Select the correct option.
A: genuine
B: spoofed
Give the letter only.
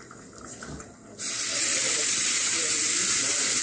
A